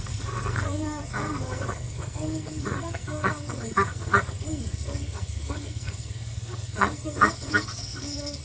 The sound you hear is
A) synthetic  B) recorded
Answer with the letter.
A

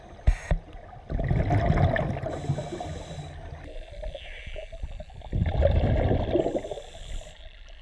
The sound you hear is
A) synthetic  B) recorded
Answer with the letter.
B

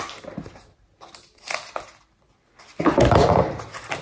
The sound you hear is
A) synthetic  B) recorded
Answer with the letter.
B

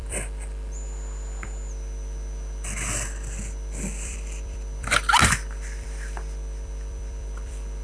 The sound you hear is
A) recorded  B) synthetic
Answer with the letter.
B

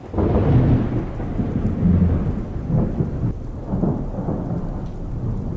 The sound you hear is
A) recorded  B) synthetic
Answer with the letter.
A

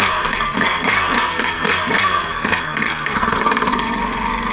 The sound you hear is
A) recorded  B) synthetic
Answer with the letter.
B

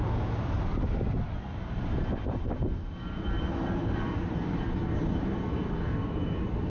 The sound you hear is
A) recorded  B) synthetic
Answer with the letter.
B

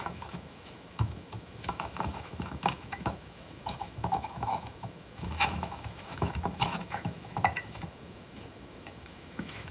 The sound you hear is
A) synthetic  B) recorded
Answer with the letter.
A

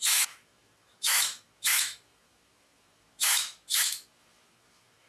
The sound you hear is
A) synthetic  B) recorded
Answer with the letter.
A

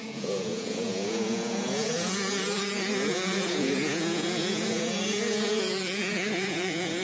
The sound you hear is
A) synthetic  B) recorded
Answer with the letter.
A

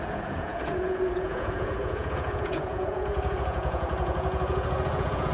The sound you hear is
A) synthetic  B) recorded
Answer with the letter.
A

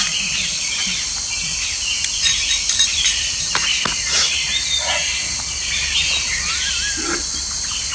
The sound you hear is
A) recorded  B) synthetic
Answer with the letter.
A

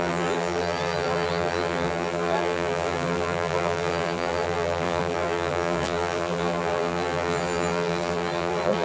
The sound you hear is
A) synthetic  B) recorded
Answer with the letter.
A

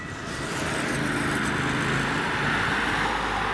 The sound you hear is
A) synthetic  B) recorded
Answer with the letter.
B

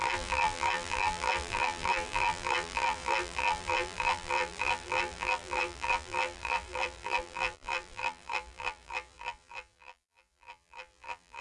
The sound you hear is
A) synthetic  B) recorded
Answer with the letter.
A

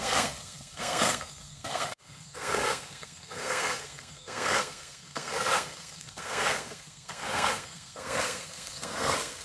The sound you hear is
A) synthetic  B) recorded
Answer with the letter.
A